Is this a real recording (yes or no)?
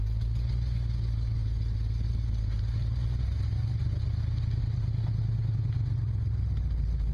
yes